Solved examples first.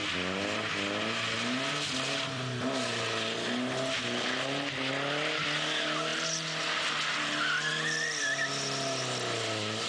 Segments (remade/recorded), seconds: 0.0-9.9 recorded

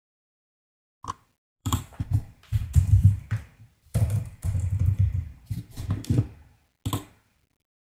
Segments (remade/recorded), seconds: 0.0-1.6 recorded; 1.6-6.2 remade; 6.2-7.8 recorded

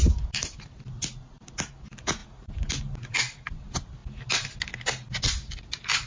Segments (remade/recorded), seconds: 0.0-6.1 recorded

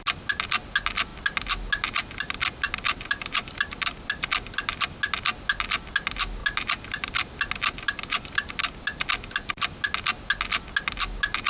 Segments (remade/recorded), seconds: 0.0-11.5 recorded

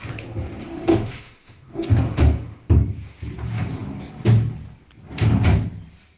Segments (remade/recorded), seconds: 0.0-0.6 recorded; 0.6-2.7 remade; 2.7-6.2 recorded

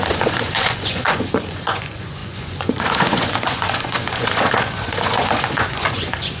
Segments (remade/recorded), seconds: 0.0-6.4 remade

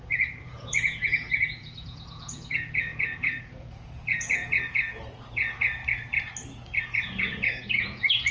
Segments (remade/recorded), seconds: 0.0-5.8 remade; 5.8-6.8 recorded; 6.8-8.3 remade